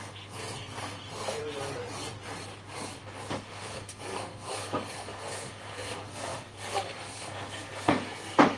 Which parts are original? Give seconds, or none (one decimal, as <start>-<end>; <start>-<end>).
1.4-3.4